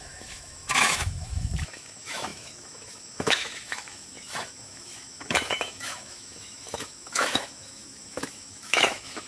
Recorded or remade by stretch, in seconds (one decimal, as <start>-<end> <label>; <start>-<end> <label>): 0.0-9.3 remade